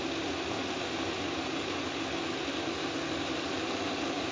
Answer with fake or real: real